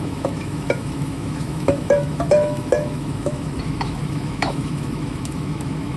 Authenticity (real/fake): fake